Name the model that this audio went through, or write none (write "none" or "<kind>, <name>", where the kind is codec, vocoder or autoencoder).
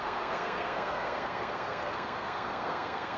codec, SNAC